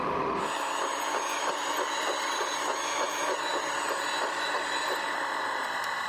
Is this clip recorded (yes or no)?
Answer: yes